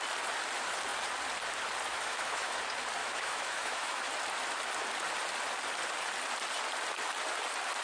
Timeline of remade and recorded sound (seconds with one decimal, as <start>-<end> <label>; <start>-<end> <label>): 0.0-1.9 recorded; 1.9-2.6 remade; 2.6-3.0 recorded; 3.0-4.1 remade; 4.1-7.8 recorded